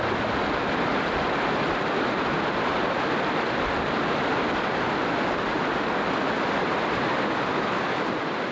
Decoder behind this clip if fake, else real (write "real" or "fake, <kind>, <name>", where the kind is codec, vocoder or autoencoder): real